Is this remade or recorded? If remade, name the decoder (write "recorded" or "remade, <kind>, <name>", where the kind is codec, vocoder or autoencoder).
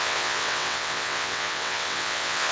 remade, vocoder, WaveNeXt